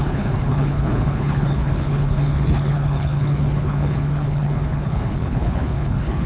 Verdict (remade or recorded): remade